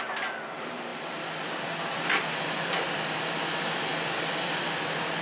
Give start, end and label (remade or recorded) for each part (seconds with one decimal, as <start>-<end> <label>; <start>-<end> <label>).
0.0-0.9 recorded; 0.9-3.3 remade; 3.3-3.9 recorded; 3.9-4.6 remade; 4.6-5.2 recorded